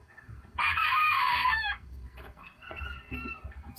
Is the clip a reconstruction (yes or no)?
yes